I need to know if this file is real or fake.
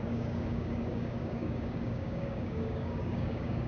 fake